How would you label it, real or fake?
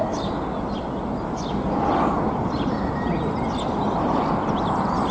real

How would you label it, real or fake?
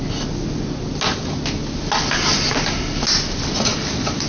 real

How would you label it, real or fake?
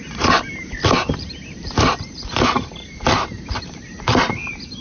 fake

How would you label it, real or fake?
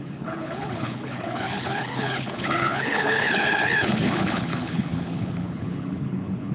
fake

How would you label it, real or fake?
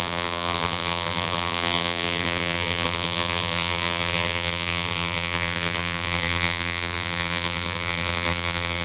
fake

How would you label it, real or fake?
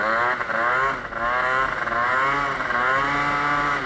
real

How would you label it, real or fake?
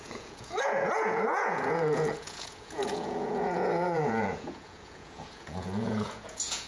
fake